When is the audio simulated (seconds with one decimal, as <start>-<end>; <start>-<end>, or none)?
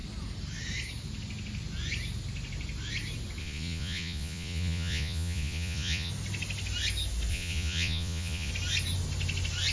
3.4-6.1; 7.3-8.5